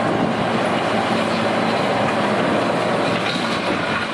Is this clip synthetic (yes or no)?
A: no